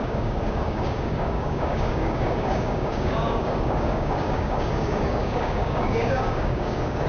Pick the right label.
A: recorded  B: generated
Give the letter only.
B